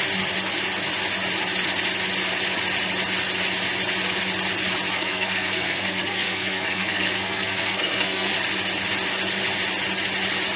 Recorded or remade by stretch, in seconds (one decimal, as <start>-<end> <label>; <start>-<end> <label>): 0.0-4.9 recorded; 4.9-8.3 remade; 8.3-10.6 recorded

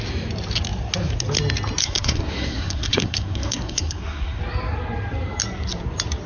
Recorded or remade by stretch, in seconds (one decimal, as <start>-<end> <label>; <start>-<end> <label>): 0.0-1.8 recorded; 1.8-4.4 remade; 4.4-6.3 recorded

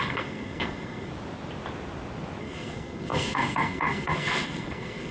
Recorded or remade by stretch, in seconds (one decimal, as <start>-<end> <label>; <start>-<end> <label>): 0.0-1.1 remade; 1.1-2.4 recorded; 2.4-5.1 remade

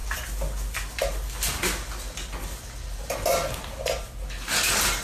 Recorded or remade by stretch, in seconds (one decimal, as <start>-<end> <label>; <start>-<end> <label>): 0.0-5.0 recorded

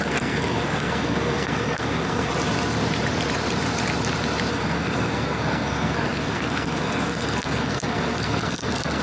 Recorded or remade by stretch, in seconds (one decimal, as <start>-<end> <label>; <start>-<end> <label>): 0.0-2.3 remade; 2.3-4.5 recorded; 4.5-9.0 remade